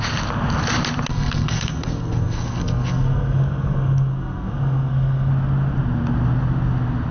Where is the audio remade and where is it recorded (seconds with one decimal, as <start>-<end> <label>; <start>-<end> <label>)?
0.0-1.1 recorded; 1.1-5.3 remade; 5.3-7.1 recorded